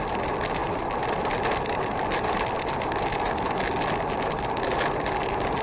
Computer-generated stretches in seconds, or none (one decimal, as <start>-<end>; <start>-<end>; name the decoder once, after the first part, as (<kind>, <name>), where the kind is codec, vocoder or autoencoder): none